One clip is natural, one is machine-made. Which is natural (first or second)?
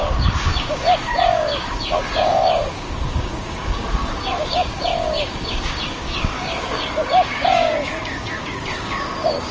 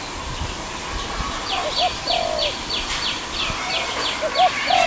second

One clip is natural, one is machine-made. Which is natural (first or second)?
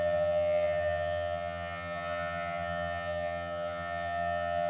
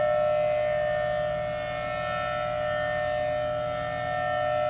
second